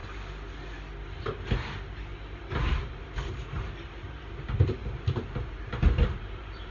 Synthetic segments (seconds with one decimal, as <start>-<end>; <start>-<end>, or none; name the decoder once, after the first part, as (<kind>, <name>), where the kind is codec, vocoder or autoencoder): 4.8-6.7 (vocoder, BigVGAN v2)